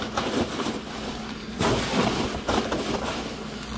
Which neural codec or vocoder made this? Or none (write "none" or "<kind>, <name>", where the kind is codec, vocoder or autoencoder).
none